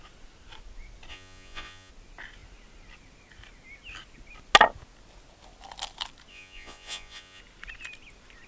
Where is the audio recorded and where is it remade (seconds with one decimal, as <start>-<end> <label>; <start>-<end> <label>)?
0.0-1.1 recorded; 1.1-1.9 remade; 1.9-6.3 recorded; 6.3-7.4 remade; 7.4-8.5 recorded